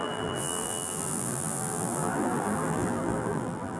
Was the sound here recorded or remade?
remade